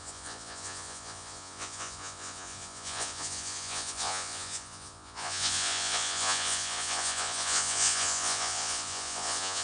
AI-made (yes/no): yes